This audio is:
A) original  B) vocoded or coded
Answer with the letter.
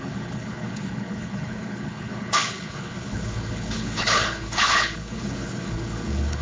B